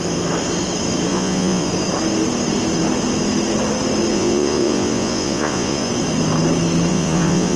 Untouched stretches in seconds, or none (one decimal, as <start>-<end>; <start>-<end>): 0.0-1.1; 1.7-4.1; 5.9-6.9